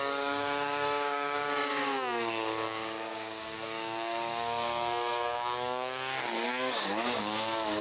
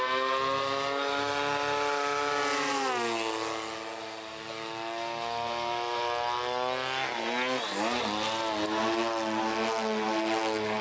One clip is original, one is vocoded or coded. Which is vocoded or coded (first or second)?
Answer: first